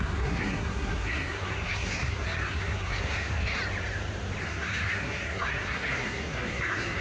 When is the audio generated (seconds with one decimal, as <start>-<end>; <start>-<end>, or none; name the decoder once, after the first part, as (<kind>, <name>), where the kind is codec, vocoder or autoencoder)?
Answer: 0.0-3.6 (codec, SNAC); 4.4-7.0